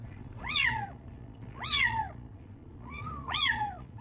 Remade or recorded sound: remade